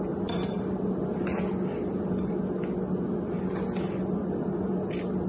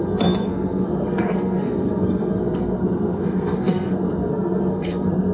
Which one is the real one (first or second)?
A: first